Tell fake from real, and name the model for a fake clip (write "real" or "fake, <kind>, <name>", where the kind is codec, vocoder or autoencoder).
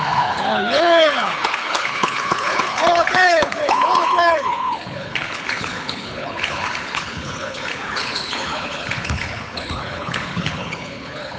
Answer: fake, codec, HILCodec